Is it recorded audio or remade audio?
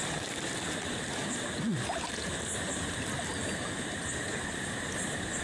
recorded